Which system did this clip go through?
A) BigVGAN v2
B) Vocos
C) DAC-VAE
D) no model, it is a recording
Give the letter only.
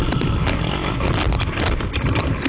D